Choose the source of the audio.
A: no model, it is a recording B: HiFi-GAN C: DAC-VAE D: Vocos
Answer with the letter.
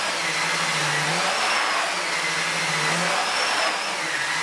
A